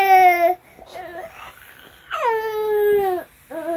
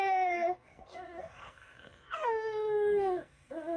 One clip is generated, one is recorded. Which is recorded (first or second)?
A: first